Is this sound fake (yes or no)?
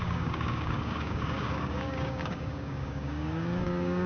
yes